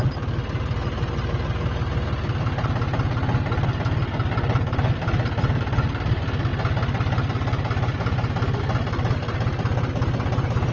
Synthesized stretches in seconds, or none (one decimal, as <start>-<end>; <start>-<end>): none